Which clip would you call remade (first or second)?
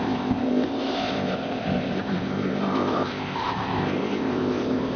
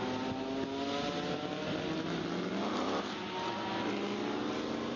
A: first